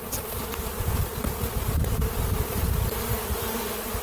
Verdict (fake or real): real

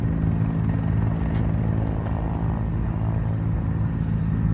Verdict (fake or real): real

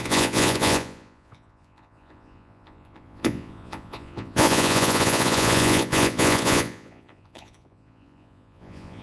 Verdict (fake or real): fake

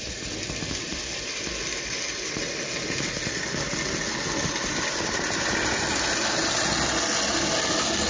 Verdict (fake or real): real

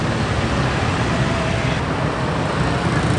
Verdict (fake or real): real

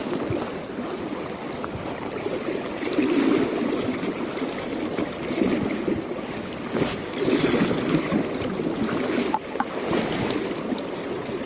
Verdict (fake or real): real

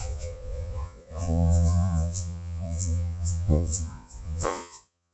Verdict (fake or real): fake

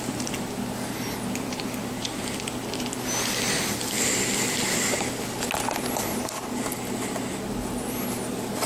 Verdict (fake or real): real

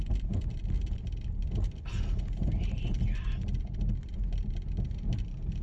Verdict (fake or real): real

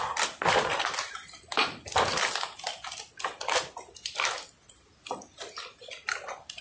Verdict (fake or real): real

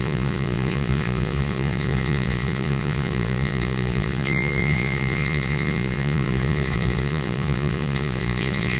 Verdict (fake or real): fake